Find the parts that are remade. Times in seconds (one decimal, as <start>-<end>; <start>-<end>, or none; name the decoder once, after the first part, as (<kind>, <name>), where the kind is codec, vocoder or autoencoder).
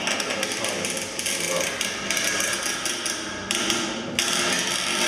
none